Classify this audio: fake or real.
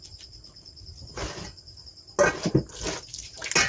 real